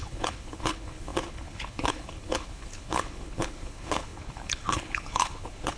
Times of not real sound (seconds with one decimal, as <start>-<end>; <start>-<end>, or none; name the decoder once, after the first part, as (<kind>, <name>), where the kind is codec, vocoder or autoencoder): 0.0-5.8 (codec, HILCodec)